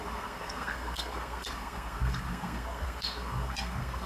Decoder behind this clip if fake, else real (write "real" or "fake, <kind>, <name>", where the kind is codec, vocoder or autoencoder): fake, codec, SNAC